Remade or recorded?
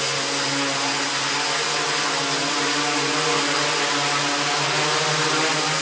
recorded